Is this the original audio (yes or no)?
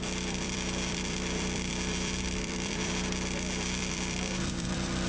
no